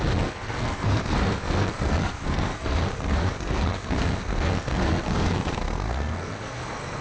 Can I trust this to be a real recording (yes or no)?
no